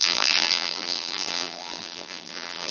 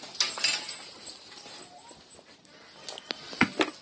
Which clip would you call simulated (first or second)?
first